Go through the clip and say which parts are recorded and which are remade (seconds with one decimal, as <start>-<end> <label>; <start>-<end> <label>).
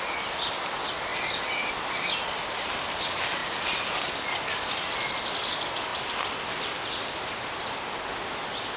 0.0-1.1 recorded; 1.1-1.7 remade; 1.7-3.4 recorded; 3.4-4.1 remade; 4.1-8.8 recorded